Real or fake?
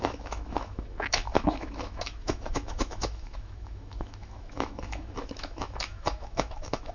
fake